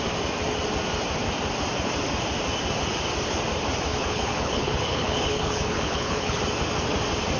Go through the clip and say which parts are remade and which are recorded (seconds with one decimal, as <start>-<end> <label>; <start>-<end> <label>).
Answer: 0.0-3.9 recorded; 3.9-6.4 remade; 6.4-7.4 recorded